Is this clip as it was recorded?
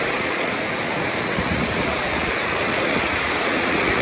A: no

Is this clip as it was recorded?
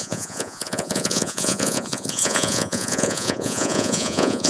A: no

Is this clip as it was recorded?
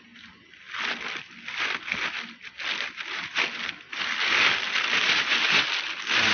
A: yes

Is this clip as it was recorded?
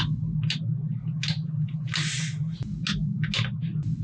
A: yes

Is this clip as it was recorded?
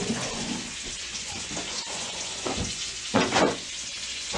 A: no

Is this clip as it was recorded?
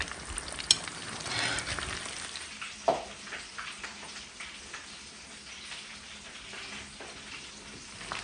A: yes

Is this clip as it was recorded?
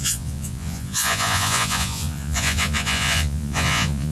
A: no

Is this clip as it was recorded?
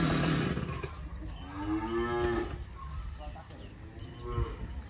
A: yes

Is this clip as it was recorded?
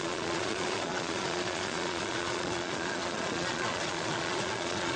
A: no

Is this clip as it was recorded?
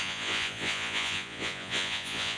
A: no